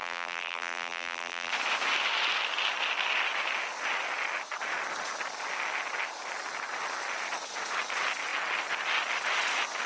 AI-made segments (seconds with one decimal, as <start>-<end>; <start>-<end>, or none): 0.0-1.5